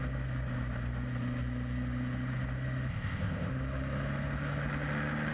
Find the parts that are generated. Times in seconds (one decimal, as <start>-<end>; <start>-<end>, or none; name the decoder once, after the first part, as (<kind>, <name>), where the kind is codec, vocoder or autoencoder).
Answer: 2.9-3.5 (codec, ZipCodec)